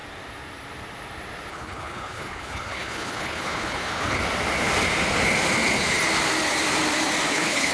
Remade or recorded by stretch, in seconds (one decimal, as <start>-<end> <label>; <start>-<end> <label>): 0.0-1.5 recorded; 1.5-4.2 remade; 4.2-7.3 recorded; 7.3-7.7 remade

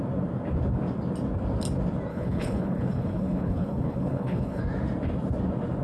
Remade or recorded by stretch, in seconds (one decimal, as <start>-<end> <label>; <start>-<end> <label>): 0.0-2.1 recorded; 2.1-4.6 remade; 4.6-5.8 recorded

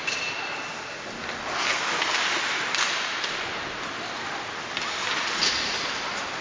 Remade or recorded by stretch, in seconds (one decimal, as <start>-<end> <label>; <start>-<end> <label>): 0.0-6.4 recorded

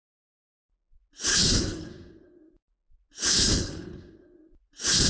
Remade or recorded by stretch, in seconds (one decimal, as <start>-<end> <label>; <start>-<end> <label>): 0.0-1.3 recorded; 1.3-1.9 remade; 1.9-3.3 recorded; 3.3-4.0 remade; 4.0-5.1 recorded